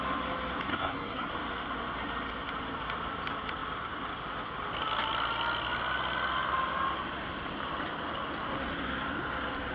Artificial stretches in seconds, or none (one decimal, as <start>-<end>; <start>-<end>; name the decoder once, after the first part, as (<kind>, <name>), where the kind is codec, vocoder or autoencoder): 0.7-1.3 (codec, SNAC)

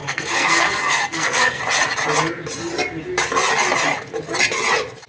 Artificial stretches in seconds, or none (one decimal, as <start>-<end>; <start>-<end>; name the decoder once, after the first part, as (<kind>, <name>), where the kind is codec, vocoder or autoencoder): 0.0-1.6 (codec, SNAC)

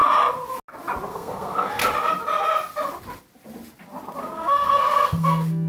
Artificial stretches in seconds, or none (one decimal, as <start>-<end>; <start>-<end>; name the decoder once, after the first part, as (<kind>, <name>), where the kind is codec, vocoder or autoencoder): 1.1-1.8 (codec, SNAC); 4.2-5.7

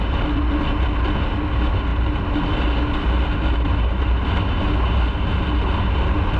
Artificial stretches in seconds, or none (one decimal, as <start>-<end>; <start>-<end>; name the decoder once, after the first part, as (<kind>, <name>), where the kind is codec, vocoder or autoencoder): none